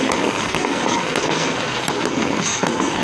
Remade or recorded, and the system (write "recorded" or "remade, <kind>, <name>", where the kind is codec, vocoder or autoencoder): remade, codec, SNAC